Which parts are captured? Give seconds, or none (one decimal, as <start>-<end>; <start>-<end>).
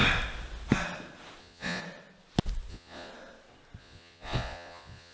0.0-1.4; 1.8-2.7; 3.1-3.8